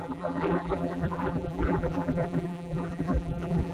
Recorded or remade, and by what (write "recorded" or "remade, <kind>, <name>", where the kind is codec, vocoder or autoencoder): remade, vocoder, BigVGAN v2